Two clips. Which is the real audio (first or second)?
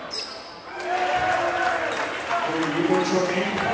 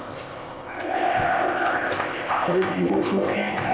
first